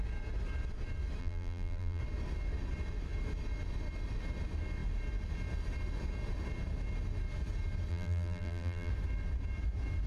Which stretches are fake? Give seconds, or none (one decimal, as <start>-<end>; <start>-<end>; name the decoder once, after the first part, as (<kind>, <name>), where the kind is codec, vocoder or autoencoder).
1.2-2.0 (vocoder, BigVGAN v2); 7.9-8.9